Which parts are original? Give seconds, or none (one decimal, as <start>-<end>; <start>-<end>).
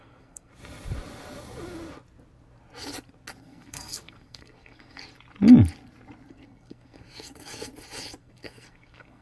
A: 0.5-3.4; 5.0-6.3; 7.7-8.2